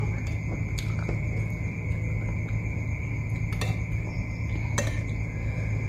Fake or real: real